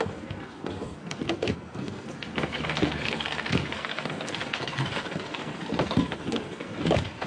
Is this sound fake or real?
fake